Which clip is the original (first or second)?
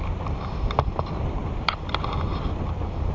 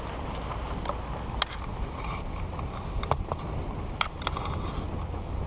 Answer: second